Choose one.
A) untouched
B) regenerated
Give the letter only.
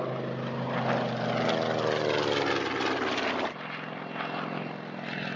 A